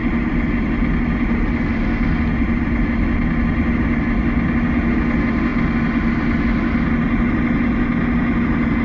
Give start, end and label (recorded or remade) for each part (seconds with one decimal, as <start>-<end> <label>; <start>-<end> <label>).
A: 0.0-8.8 recorded